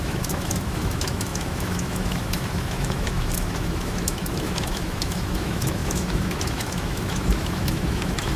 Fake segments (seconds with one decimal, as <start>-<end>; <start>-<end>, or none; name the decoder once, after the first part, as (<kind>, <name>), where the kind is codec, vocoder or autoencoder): 0.0-8.4 (autoencoder, DAC-VAE)